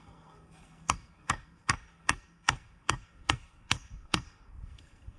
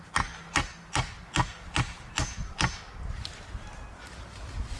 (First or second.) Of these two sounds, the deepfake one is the first